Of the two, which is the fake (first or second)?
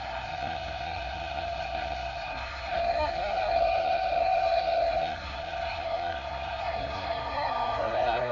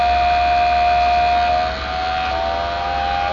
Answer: first